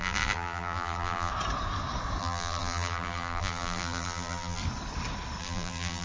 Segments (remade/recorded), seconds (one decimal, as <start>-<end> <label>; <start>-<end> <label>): 0.0-1.3 remade; 1.3-2.2 recorded; 2.2-4.6 remade; 4.6-5.4 recorded; 5.4-6.0 remade